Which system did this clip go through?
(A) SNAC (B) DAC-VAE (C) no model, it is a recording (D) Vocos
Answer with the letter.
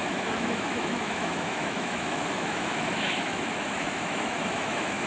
B